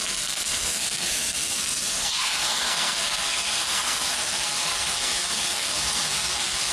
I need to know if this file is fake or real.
fake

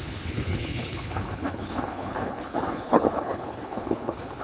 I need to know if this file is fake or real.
fake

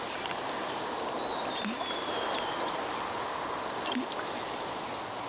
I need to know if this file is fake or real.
fake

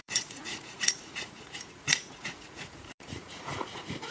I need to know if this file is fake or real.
fake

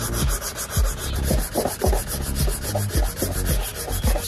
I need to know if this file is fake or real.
real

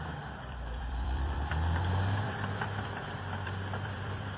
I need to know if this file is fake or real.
fake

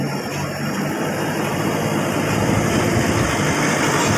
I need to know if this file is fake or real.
real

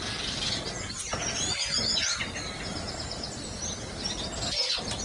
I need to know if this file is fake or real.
real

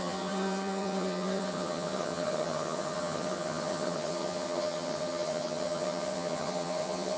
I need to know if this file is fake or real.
fake